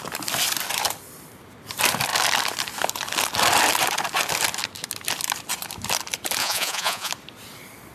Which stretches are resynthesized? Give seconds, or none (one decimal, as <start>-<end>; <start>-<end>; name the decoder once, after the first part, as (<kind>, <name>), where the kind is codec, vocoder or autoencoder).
6.4-7.1 (vocoder, Vocos)